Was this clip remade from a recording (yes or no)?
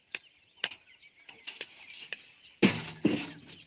no